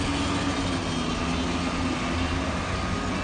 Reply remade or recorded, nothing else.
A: recorded